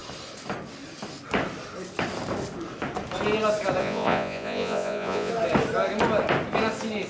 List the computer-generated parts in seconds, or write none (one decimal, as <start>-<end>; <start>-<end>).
3.8-5.3